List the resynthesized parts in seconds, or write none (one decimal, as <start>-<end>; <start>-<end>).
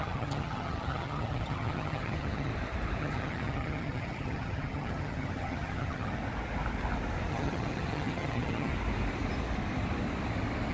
0.0-2.5; 3.0-6.2; 7.3-8.7